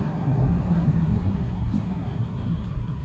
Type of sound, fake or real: fake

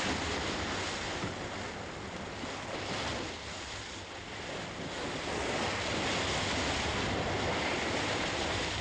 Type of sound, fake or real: real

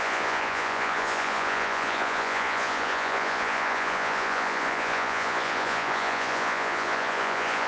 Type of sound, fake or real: fake